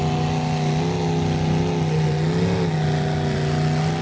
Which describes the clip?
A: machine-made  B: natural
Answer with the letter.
B